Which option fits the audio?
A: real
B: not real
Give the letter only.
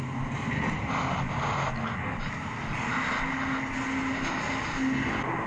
A